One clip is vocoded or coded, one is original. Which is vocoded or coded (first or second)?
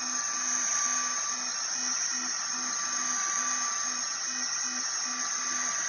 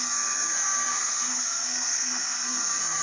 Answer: second